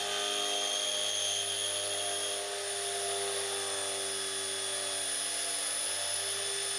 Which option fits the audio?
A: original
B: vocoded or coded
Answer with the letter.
A